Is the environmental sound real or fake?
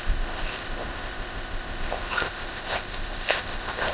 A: fake